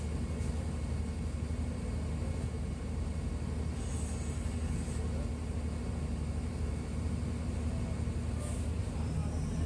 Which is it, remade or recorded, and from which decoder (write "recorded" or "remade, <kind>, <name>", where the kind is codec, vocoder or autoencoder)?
recorded